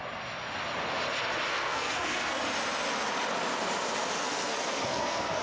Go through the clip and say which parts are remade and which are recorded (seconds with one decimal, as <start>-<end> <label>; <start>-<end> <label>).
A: 0.0-1.5 recorded; 1.5-2.4 remade; 2.4-4.2 recorded; 4.2-5.4 remade